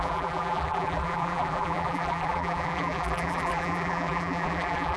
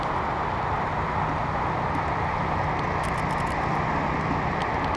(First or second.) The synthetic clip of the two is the first